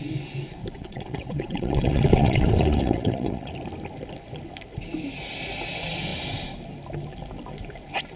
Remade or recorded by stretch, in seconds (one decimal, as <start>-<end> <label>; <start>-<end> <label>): 0.0-0.7 recorded; 0.7-3.5 remade; 3.5-8.2 recorded